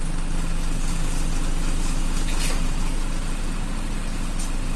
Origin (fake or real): real